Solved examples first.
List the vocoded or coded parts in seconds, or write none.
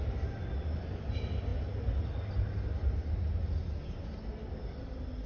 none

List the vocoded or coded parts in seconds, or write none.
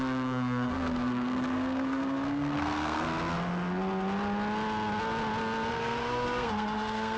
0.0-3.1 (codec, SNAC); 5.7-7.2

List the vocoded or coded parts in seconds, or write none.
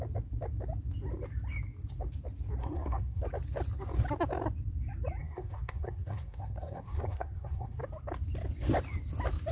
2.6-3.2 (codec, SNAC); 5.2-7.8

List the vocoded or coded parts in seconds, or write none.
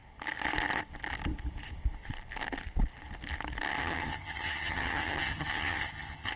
3.8-6.4 (vocoder, HiFi-GAN)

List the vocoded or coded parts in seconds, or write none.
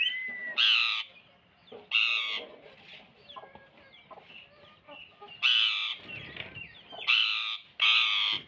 none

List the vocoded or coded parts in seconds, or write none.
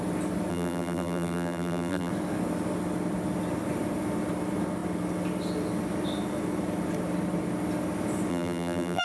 0.5-2.1 (vocoder, BigVGAN v2); 8.3-9.0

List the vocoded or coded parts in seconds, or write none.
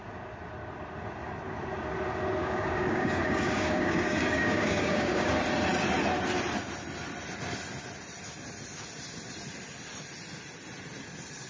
2.4-5.3 (codec, DAC)